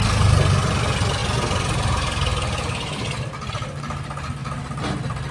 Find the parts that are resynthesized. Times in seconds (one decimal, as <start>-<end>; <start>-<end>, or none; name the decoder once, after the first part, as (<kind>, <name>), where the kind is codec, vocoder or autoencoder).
none